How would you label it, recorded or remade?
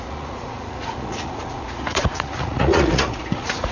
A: remade